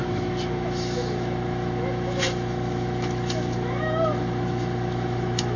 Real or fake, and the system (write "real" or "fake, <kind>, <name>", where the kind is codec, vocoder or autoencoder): fake, autoencoder, DAC-VAE